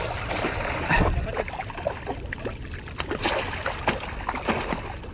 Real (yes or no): yes